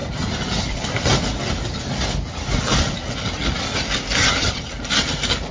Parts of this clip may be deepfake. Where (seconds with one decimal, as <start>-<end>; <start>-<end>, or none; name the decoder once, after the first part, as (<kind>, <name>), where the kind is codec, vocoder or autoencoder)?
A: 4.2-4.7 (vocoder, HiFi-GAN)